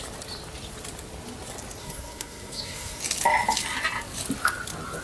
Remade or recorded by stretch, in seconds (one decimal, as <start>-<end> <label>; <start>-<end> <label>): 0.0-1.8 recorded; 1.8-3.0 remade; 3.0-5.0 recorded